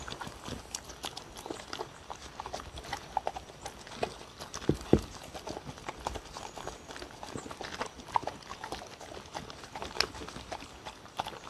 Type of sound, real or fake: real